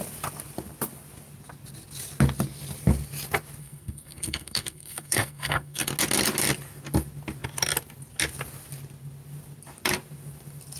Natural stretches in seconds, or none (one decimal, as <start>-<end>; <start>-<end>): 0.0-3.6; 5.9-10.8